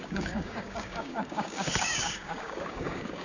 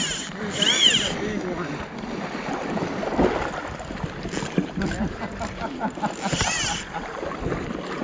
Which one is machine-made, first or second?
first